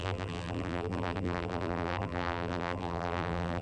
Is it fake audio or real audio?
fake